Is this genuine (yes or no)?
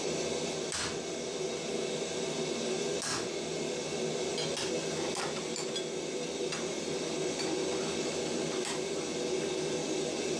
yes